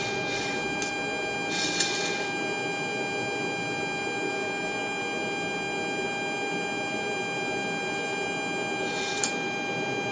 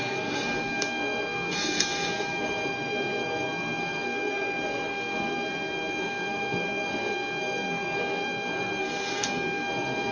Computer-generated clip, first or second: second